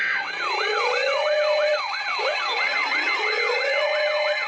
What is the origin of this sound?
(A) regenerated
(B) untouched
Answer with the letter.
A